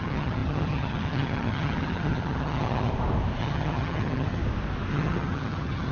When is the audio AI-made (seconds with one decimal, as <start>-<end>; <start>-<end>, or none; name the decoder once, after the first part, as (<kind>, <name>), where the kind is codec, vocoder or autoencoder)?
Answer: 0.0-2.9 (vocoder, HiFi-GAN); 3.4-4.4; 4.9-5.9